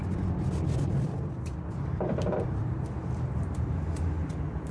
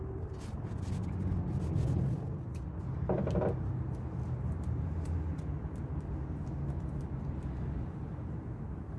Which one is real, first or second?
second